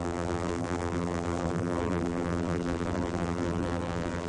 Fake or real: fake